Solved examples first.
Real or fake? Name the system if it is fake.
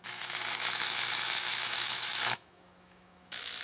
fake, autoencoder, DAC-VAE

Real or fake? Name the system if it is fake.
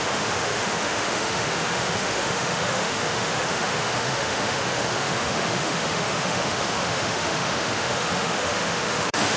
fake, autoencoder, DAC-VAE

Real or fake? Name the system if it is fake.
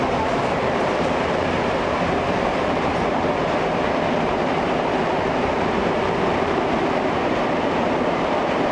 fake, vocoder, BigVGAN v2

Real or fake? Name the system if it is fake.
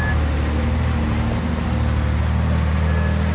real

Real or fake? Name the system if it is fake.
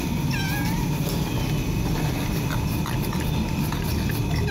real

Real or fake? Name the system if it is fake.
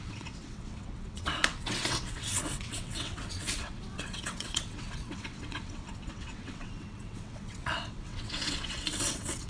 fake, vocoder, WaveNeXt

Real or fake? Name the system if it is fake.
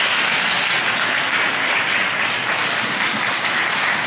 real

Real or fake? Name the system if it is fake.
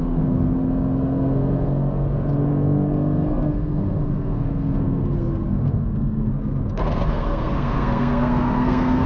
fake, codec, SNAC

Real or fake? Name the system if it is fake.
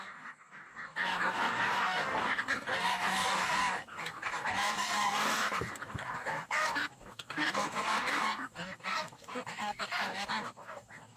fake, codec, DAC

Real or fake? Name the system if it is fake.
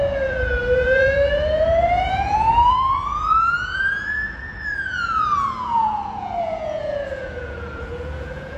fake, vocoder, Vocos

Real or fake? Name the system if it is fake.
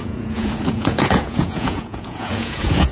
fake, vocoder, Vocos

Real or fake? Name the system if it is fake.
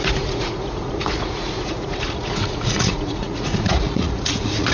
fake, vocoder, Vocos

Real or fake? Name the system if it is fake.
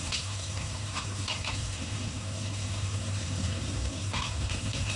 fake, codec, SNAC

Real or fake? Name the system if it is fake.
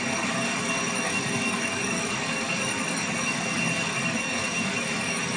fake, codec, DAC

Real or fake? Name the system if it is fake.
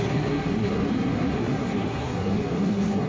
fake, codec, SNAC